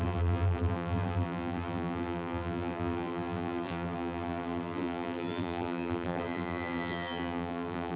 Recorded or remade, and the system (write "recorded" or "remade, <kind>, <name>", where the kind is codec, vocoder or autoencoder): remade, vocoder, BigVGAN v2